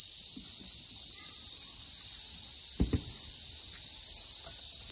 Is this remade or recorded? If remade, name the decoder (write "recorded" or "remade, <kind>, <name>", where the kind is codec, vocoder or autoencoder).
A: recorded